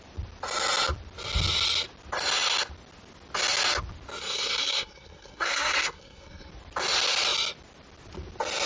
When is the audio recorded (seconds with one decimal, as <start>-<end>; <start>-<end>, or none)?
0.0-4.2; 6.5-8.7